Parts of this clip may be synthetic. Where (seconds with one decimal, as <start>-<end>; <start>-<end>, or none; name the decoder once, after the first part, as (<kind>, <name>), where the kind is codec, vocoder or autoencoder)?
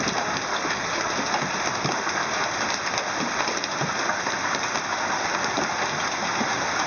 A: 0.5-1.0 (codec, DAC)